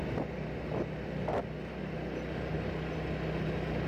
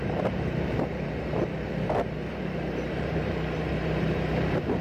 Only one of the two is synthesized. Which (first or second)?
second